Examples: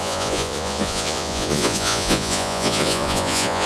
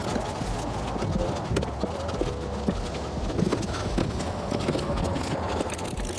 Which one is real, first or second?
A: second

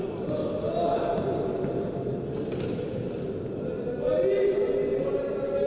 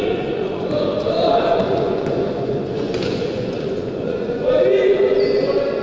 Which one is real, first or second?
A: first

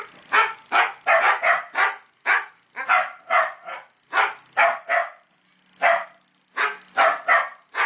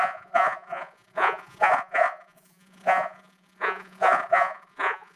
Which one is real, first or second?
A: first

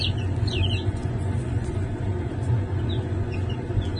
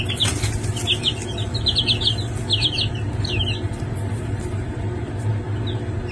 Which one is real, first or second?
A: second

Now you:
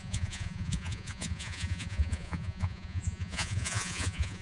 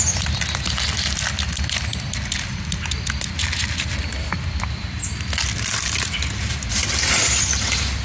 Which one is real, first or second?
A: second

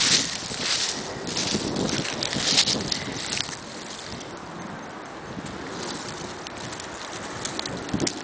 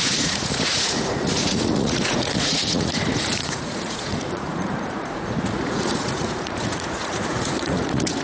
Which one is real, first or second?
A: first